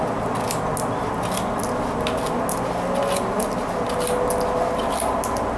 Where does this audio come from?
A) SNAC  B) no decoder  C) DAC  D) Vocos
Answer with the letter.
B